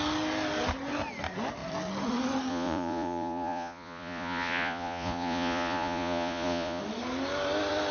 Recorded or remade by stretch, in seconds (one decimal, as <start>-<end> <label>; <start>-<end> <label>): 0.0-2.5 recorded; 2.5-6.8 remade; 6.8-7.9 recorded